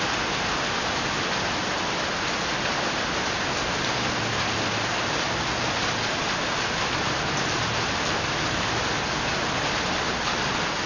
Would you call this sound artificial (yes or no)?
no